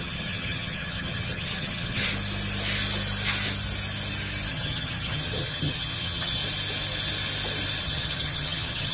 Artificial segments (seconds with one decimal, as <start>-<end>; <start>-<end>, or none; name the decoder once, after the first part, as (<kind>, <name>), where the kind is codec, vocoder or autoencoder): 0.0-2.1 (vocoder, HiFi-GAN); 4.5-6.4; 7.8-8.9